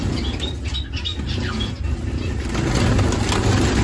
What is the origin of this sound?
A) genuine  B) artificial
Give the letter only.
A